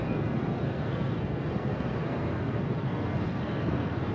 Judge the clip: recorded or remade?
remade